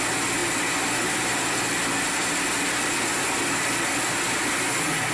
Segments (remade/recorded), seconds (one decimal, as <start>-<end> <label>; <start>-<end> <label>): 0.0-5.1 recorded